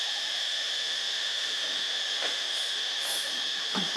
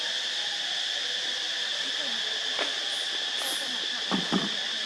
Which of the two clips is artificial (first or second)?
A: first